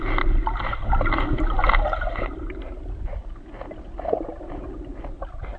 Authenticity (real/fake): real